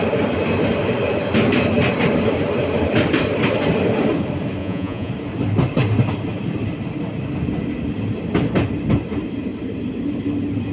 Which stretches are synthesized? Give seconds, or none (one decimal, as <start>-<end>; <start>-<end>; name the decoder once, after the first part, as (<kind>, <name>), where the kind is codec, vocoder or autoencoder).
4.6-5.1 (vocoder, Vocos)